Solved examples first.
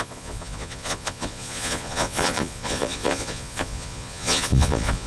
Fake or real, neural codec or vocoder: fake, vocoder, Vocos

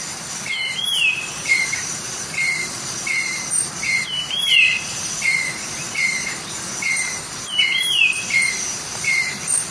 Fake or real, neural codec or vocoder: fake, vocoder, BigVGAN v2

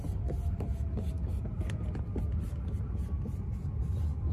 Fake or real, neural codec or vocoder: real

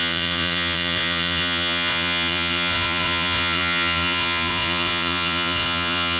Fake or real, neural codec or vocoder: fake, vocoder, Vocos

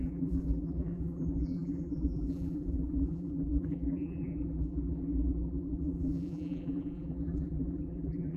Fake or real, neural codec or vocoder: fake, vocoder, BigVGAN v2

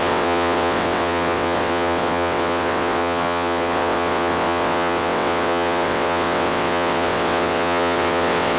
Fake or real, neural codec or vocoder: fake, vocoder, WaveNeXt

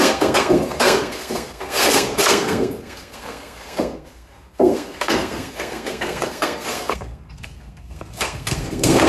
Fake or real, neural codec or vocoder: fake, codec, SNAC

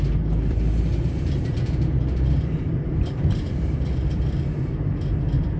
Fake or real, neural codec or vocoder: fake, vocoder, BigVGAN v2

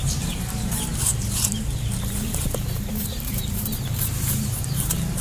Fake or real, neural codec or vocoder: fake, vocoder, BigVGAN v2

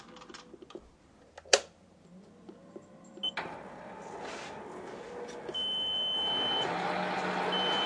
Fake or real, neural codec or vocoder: real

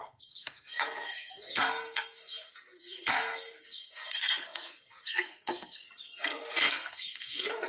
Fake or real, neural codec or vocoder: fake, codec, SNAC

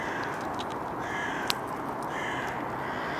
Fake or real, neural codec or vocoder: real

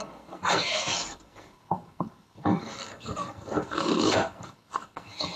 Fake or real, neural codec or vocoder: fake, codec, SNAC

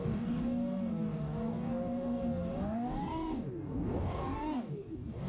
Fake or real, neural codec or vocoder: fake, codec, DAC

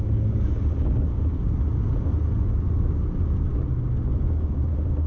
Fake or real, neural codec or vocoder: real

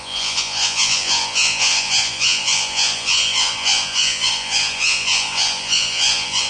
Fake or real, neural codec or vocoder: fake, vocoder, Vocos